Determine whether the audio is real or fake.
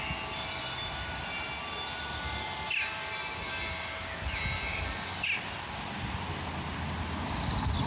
real